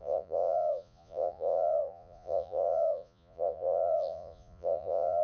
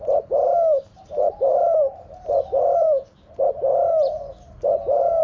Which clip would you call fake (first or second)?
first